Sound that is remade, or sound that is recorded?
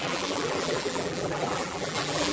remade